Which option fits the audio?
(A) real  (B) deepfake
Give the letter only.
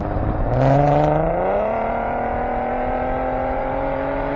B